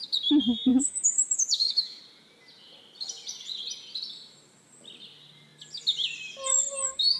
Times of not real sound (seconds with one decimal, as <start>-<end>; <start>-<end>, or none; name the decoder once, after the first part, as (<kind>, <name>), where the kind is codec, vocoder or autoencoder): 0.7-2.0 (autoencoder, DAC-VAE)